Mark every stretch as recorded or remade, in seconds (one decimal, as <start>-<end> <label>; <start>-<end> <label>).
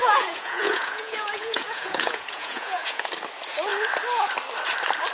0.0-3.1 remade; 3.1-5.1 recorded